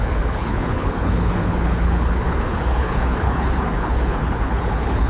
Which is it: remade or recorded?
remade